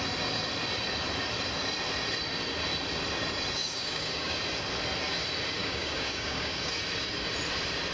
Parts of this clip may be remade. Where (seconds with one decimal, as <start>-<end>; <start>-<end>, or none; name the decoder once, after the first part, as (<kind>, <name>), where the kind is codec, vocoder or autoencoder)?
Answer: 3.6-4.4 (codec, DAC); 5.6-6.7